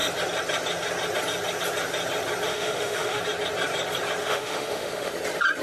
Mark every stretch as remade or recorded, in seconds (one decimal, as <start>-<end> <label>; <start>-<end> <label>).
0.0-2.5 recorded; 2.5-3.2 remade; 3.2-4.2 recorded; 4.2-5.1 remade; 5.1-5.6 recorded